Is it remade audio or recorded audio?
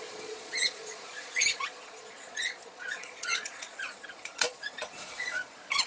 remade